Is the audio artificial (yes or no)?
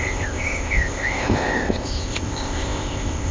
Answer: yes